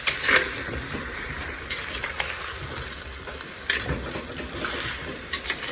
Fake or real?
fake